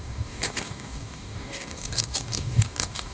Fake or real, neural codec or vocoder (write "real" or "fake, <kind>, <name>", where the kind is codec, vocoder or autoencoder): fake, codec, DAC